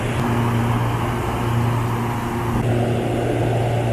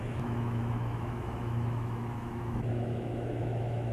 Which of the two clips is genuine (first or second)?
first